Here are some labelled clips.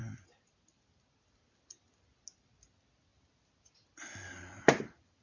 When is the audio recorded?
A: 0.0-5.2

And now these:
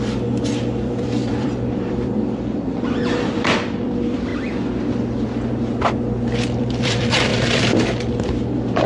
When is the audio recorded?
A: 4.3-6.6

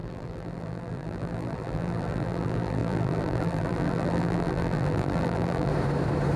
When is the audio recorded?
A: 5.7-6.4

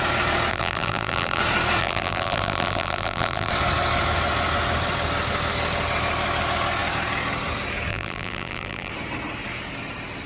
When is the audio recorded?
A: 0.0-0.5; 1.4-1.8; 3.5-7.9; 8.9-10.3